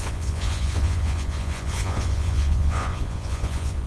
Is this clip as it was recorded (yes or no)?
no